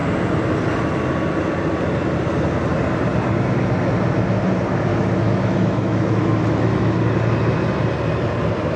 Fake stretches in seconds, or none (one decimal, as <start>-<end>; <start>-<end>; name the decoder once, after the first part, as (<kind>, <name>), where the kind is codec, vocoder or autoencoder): 4.9-7.0 (autoencoder, DAC-VAE)